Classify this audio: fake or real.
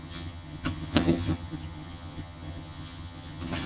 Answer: fake